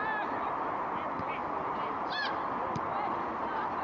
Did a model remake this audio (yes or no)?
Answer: yes